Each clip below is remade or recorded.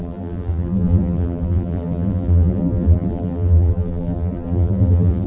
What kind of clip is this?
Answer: remade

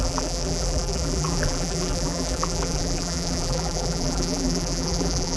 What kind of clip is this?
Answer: remade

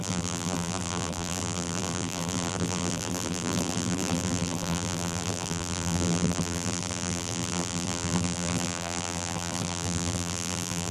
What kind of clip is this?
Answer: remade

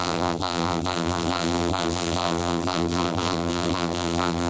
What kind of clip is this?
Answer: remade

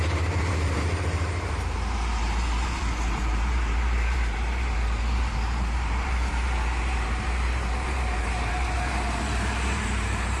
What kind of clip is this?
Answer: remade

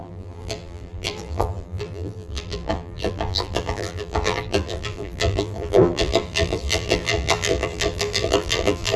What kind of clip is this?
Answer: remade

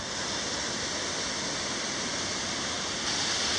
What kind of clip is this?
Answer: recorded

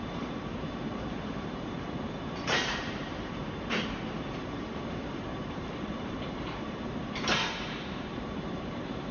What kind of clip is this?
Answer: remade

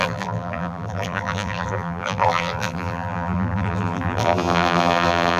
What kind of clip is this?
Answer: remade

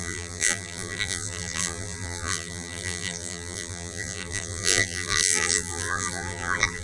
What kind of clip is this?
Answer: remade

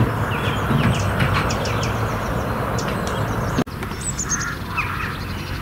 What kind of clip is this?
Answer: recorded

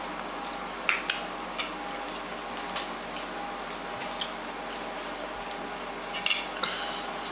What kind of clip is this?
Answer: recorded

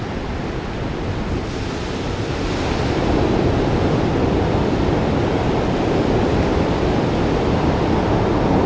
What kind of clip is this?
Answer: recorded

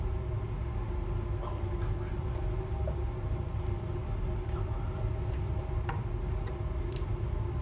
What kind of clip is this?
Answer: recorded